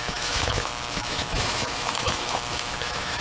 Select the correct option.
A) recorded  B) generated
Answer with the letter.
B